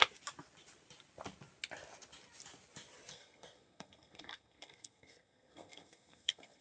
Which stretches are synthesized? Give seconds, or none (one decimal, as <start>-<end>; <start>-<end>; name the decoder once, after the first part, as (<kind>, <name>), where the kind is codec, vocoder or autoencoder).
3.1-6.6 (codec, SNAC)